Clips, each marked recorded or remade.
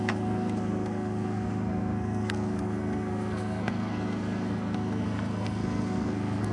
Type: remade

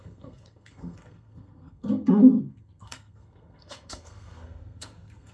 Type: remade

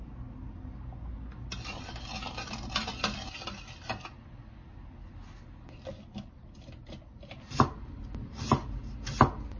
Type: recorded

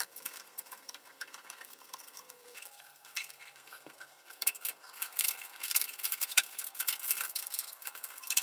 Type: remade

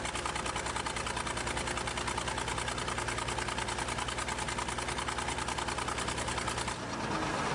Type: recorded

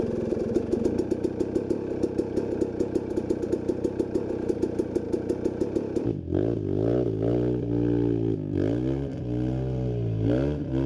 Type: recorded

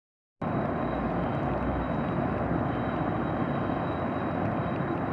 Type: recorded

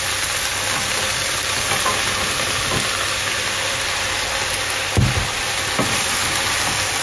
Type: recorded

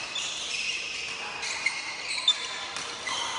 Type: recorded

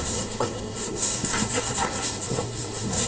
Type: remade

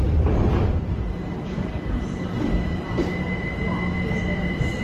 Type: recorded